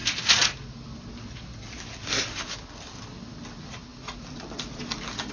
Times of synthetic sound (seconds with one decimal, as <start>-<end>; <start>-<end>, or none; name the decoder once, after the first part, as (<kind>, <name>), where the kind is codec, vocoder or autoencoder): none